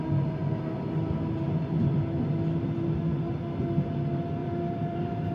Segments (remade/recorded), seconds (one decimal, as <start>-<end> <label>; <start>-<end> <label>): 0.0-4.4 recorded; 4.4-5.3 remade